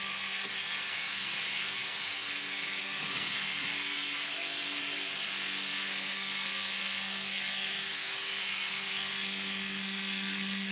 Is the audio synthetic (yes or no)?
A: yes